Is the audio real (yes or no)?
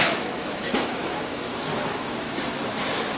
no